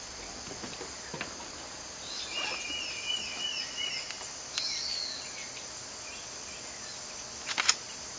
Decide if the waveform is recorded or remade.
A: recorded